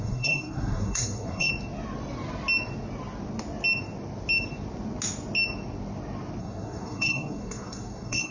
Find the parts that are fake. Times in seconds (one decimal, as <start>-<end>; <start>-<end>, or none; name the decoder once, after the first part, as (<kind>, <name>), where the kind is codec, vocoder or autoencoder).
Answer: 0.0-1.5 (codec, SNAC); 6.4-8.3